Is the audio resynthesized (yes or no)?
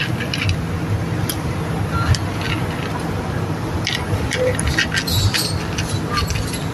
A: no